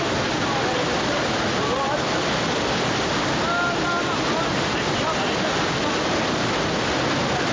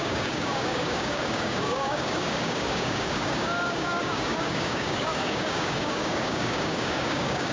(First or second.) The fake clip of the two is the second